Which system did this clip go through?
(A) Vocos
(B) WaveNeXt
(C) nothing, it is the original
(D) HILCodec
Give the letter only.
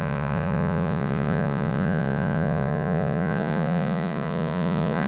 A